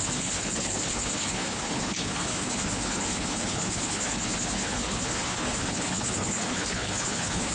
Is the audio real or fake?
fake